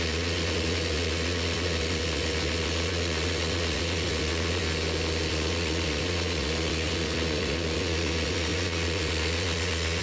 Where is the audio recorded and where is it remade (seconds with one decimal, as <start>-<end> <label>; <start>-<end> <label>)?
0.0-4.6 remade; 4.6-5.3 recorded; 5.3-10.0 remade